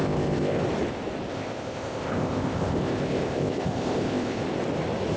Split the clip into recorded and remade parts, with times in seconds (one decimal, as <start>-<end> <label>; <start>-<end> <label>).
0.0-0.6 remade; 0.6-1.3 recorded; 1.3-4.4 remade; 4.4-5.2 recorded